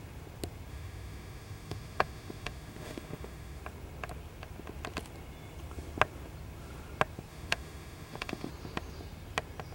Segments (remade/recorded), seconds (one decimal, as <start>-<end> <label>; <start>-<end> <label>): 0.0-0.7 recorded; 0.7-3.6 remade; 3.6-7.3 recorded; 7.3-8.5 remade; 8.5-9.7 recorded

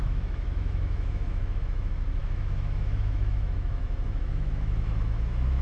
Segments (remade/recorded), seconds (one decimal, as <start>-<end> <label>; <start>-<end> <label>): 0.0-5.6 remade

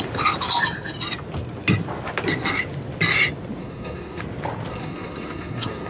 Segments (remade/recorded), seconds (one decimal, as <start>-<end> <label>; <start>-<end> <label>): 0.0-3.6 recorded; 3.6-4.2 remade; 4.2-4.7 recorded; 4.7-5.9 remade

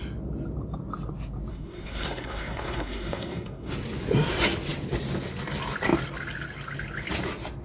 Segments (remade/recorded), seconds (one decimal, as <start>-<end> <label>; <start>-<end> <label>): 0.0-1.5 recorded; 1.5-3.7 remade; 3.7-7.6 recorded

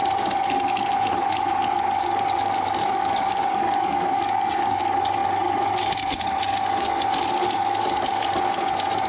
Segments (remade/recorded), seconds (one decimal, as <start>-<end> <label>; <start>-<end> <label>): 0.0-2.8 recorded; 2.8-4.8 remade; 4.8-9.1 recorded

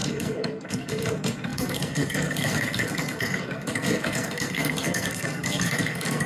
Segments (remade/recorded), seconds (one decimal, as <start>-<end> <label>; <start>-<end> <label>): 0.0-6.3 remade

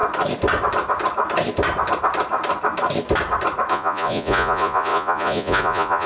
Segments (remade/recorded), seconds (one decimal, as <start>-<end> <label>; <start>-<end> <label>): 0.0-3.7 recorded; 3.7-6.1 remade